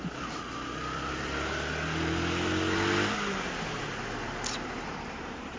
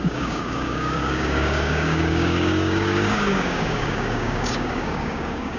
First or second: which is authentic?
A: first